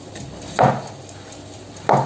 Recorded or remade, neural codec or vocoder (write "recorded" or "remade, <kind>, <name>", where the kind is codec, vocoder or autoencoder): recorded